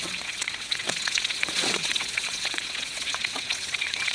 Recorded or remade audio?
remade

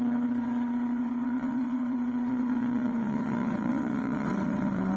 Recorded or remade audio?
remade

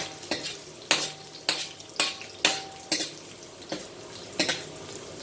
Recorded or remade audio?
recorded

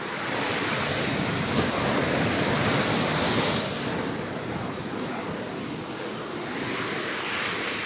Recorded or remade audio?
recorded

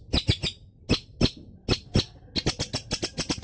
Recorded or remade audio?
recorded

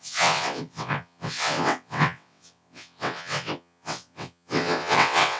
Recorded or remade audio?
remade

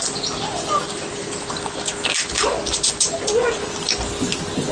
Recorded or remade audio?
recorded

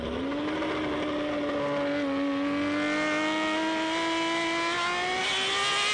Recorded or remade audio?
recorded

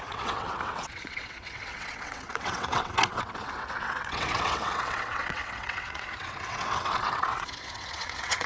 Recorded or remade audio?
remade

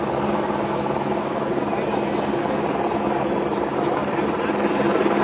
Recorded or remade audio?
recorded